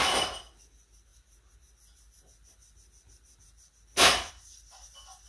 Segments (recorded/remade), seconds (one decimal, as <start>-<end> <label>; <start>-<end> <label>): 0.0-5.3 recorded

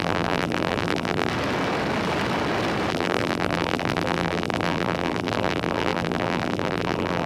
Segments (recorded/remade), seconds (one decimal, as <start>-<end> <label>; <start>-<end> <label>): 0.0-1.3 remade; 1.3-2.9 recorded; 2.9-7.3 remade

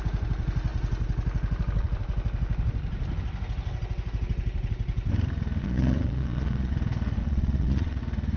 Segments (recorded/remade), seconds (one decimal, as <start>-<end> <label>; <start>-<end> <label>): 0.0-5.6 recorded; 5.6-6.7 remade; 6.7-7.2 recorded; 7.2-8.0 remade; 8.0-8.4 recorded

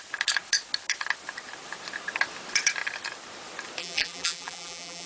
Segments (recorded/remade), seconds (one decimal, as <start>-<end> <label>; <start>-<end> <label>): 0.0-3.8 recorded; 3.8-5.1 remade

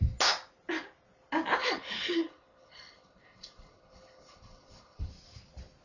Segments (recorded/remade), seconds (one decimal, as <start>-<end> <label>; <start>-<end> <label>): 0.0-1.6 recorded; 1.6-5.1 remade; 5.1-5.8 recorded

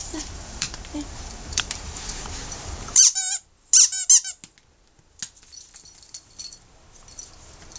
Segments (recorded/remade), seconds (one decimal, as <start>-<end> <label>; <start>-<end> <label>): 0.0-3.2 remade; 3.2-7.8 recorded